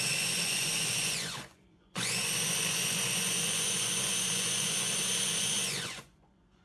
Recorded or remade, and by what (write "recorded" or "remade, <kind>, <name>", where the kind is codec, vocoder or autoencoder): remade, vocoder, Vocos